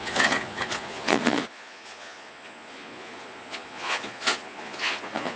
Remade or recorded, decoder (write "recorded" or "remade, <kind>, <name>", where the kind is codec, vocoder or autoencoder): remade, vocoder, Vocos